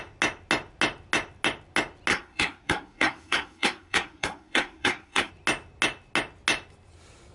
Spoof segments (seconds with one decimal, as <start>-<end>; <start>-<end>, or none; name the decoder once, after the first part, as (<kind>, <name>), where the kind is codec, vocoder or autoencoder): 2.1-5.3 (codec, SNAC)